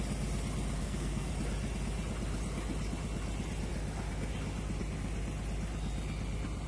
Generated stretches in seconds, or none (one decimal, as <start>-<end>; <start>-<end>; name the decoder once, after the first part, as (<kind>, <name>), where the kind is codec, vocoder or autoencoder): 0.8-1.3 (codec, SNAC)